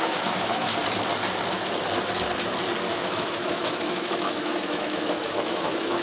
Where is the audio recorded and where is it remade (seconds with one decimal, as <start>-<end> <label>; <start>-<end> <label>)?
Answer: 0.0-0.7 remade; 0.7-2.9 recorded; 2.9-6.0 remade